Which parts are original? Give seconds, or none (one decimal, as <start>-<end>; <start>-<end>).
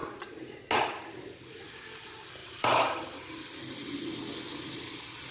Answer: 0.5-2.4; 3.6-5.3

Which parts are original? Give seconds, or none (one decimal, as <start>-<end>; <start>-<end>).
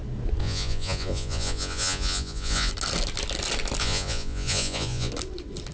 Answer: 0.0-0.4; 2.7-3.8; 5.1-5.7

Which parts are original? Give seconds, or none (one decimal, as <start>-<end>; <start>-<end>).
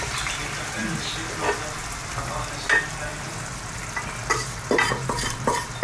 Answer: 0.0-5.8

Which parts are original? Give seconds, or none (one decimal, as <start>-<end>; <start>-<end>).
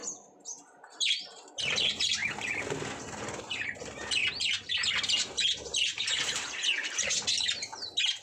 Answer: 2.2-3.4; 4.2-5.9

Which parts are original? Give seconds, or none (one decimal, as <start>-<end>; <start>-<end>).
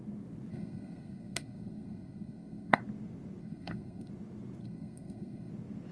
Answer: 0.0-0.5; 2.8-3.4; 4.1-4.6; 5.5-5.9